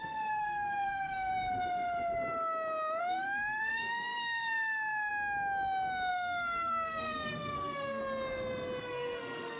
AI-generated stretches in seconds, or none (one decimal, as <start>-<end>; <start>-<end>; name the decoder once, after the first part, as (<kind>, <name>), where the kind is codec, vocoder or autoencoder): 0.0-1.3 (codec, SNAC); 3.0-5.1; 6.1-8.0; 8.8-9.6